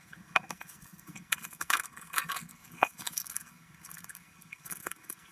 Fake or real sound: fake